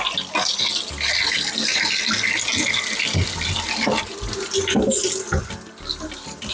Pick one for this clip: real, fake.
real